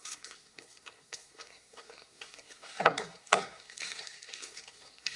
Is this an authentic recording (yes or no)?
no